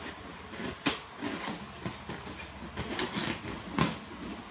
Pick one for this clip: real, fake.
real